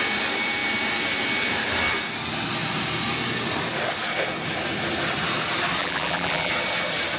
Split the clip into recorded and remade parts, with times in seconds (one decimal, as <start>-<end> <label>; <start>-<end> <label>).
0.0-5.8 recorded; 5.8-6.5 remade; 6.5-7.2 recorded